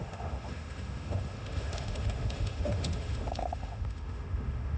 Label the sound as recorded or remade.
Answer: remade